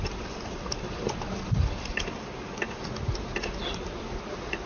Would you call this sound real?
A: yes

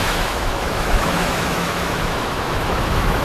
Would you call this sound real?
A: no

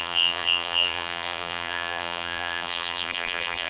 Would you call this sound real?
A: no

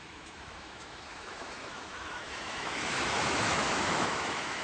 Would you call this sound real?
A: no